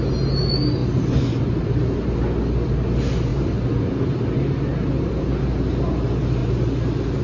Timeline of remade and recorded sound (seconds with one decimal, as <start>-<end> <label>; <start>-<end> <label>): 0.0-7.2 recorded